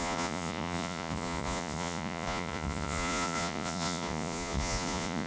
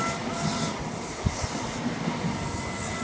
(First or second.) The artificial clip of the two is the first